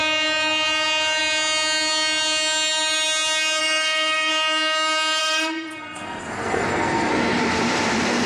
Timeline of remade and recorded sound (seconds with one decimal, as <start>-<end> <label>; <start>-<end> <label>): 0.0-3.6 recorded; 3.6-4.3 remade; 4.3-5.2 recorded; 5.2-7.1 remade; 7.1-8.3 recorded